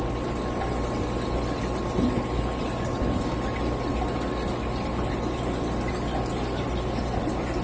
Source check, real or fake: real